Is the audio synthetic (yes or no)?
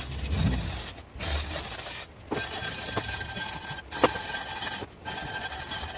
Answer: no